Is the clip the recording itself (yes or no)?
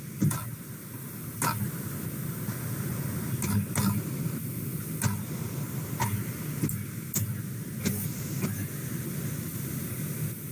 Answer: yes